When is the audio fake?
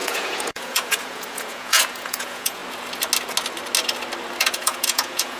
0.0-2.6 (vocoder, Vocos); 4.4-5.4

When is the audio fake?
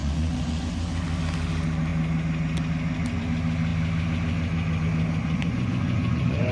0.0-0.7 (vocoder, Vocos); 5.2-6.5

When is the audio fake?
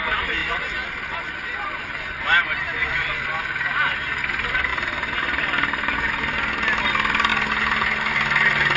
none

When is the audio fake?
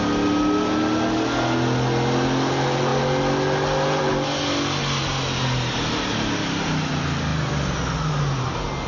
none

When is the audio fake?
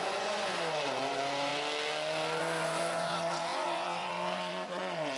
0.0-1.5 (vocoder, Vocos); 2.4-5.2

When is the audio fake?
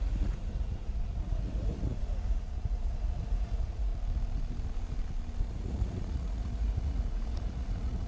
0.0-3.9 (vocoder, Vocos); 5.5-8.1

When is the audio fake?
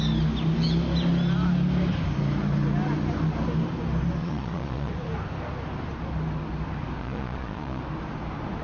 4.2-4.9 (vocoder, Vocos); 7.0-7.8